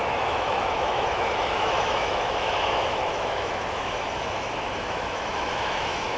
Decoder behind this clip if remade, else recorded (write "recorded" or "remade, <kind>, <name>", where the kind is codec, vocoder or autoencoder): remade, autoencoder, DAC-VAE